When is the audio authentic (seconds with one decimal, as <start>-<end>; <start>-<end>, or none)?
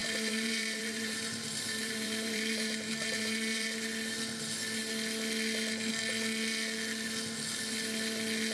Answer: 3.9-8.5